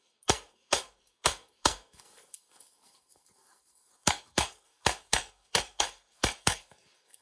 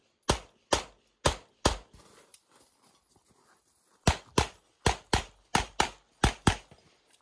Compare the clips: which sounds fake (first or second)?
first